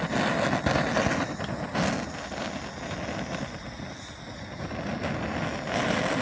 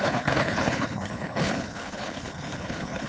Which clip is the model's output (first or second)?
second